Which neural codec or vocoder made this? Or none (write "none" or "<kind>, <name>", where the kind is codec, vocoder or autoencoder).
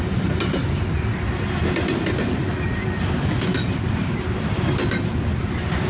none